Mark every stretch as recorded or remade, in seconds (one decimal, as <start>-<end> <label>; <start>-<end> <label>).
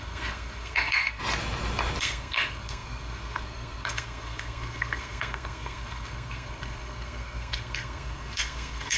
0.0-1.2 remade; 1.2-2.0 recorded; 2.0-9.0 remade